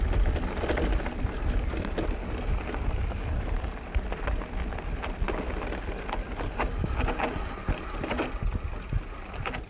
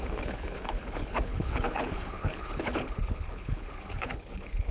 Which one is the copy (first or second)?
second